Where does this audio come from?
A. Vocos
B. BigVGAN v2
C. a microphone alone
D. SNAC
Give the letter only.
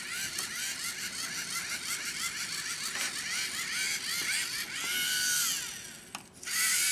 C